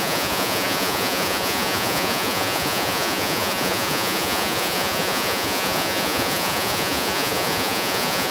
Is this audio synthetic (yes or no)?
yes